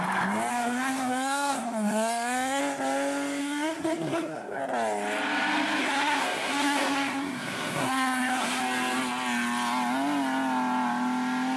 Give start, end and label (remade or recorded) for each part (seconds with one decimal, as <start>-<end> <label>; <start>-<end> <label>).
0.0-0.5 recorded; 0.5-2.6 remade; 2.6-3.4 recorded; 3.4-4.6 remade; 4.6-5.8 recorded; 5.8-8.6 remade; 8.6-11.6 recorded